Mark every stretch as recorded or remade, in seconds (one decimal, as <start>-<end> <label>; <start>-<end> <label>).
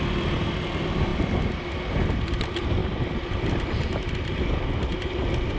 0.0-1.1 remade; 1.1-2.1 recorded; 2.1-5.6 remade